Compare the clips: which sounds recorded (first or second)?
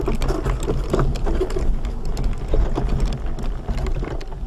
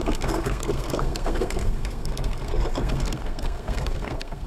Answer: first